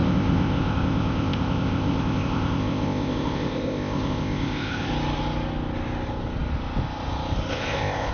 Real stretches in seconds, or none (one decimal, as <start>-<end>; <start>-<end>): 4.9-7.5